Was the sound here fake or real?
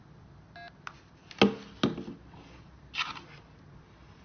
real